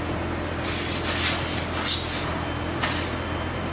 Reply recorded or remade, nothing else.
recorded